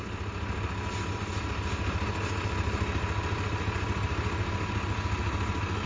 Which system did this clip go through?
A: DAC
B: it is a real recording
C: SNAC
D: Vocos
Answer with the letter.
B